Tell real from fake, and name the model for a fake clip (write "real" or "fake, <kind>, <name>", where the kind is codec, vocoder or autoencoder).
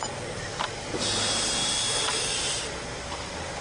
real